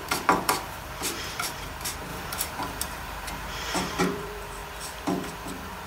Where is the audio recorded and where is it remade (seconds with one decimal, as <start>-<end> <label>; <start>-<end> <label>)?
0.0-4.6 remade; 4.6-5.3 recorded; 5.3-5.9 remade

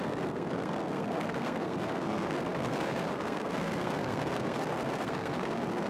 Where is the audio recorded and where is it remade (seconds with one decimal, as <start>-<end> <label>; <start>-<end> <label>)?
0.0-5.9 remade

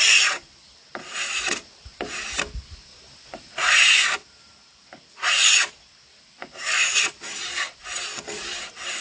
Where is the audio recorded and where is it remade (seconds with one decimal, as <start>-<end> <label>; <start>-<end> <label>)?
0.0-2.9 recorded; 2.9-4.2 remade; 4.2-6.1 recorded; 6.1-7.6 remade; 7.6-9.0 recorded

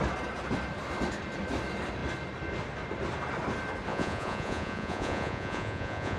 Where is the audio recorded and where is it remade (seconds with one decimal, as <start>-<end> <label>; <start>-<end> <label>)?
0.0-3.9 recorded; 3.9-6.2 remade

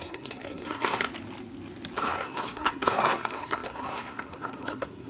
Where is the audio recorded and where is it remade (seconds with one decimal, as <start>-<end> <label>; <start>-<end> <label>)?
0.0-1.1 remade; 1.1-2.0 recorded; 2.0-5.1 remade